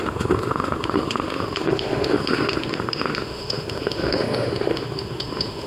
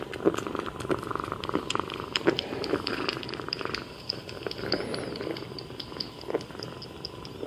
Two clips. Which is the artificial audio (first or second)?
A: first